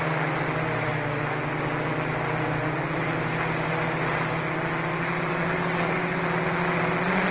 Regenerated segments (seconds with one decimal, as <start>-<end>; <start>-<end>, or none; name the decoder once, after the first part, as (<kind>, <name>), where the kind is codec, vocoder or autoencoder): 5.3-6.0 (codec, DAC)